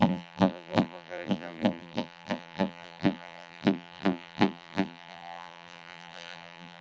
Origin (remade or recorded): remade